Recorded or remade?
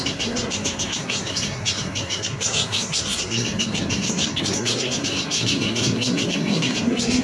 remade